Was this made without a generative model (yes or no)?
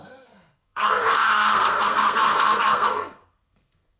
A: no